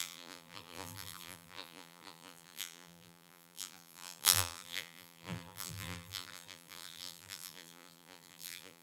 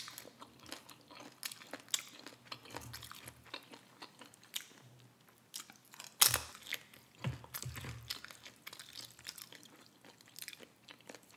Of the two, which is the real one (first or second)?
second